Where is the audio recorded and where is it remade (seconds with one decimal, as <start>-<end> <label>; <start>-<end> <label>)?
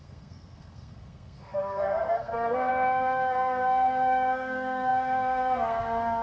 0.0-6.2 remade